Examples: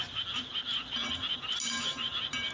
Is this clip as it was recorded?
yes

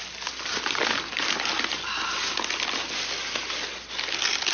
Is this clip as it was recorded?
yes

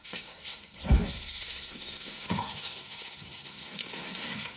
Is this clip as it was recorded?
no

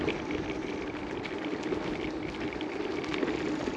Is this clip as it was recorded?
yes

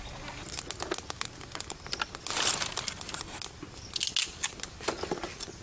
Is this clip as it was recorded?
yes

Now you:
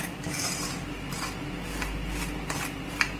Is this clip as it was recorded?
yes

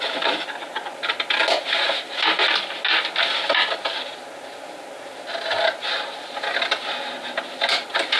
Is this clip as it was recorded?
yes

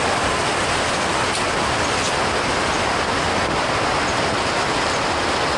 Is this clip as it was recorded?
yes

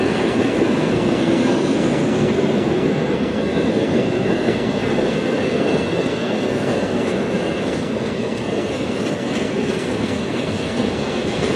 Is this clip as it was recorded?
no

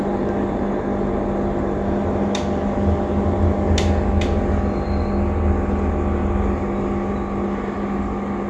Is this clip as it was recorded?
yes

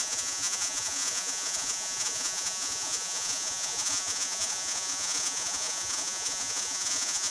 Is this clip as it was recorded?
no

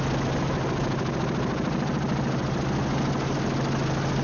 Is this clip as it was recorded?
yes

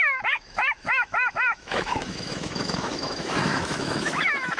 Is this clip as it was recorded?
no